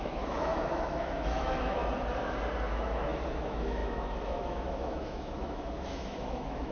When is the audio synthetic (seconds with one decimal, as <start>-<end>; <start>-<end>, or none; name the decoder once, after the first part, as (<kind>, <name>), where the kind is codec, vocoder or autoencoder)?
0.0-1.8 (autoencoder, DAC-VAE); 2.7-6.7